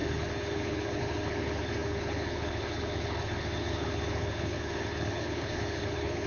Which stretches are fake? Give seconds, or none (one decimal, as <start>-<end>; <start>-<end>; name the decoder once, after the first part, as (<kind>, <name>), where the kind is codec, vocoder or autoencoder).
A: 0.0-6.3 (codec, HILCodec)